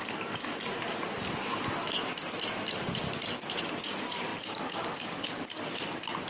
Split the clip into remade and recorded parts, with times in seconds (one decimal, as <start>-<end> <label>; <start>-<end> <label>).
0.0-6.3 recorded